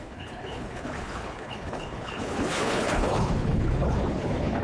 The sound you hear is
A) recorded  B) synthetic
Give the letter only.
B